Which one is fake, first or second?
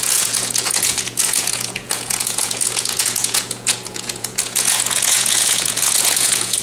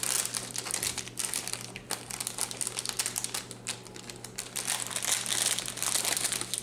first